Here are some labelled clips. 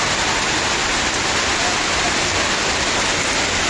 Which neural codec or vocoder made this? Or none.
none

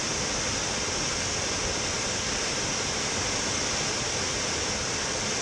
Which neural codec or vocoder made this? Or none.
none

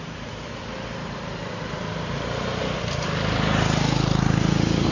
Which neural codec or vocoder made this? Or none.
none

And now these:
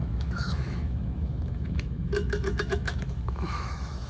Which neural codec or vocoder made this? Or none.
autoencoder, DAC-VAE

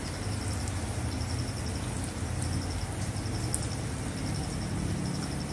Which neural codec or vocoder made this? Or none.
none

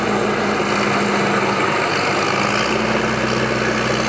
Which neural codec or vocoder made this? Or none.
none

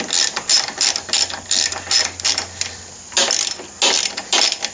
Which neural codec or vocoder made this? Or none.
none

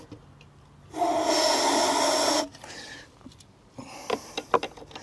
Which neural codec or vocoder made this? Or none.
none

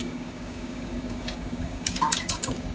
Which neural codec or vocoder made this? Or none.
codec, DAC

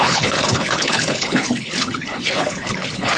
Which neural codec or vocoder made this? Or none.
codec, HILCodec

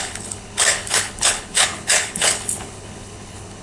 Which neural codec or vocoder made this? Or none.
codec, HILCodec